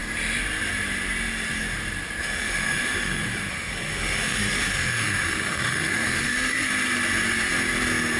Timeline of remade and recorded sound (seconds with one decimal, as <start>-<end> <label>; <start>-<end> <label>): 0.0-2.2 recorded; 2.2-6.7 remade; 6.7-8.2 recorded